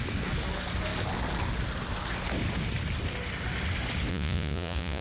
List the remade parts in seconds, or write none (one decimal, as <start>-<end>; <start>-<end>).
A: 4.1-5.0